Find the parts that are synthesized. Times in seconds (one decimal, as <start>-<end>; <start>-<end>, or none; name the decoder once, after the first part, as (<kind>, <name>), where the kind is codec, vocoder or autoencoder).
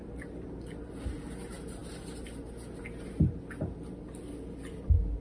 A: none